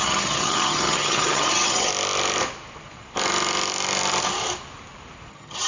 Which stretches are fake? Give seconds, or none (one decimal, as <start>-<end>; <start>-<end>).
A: 0.0-1.9; 5.3-5.7